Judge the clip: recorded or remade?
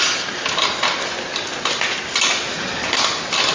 recorded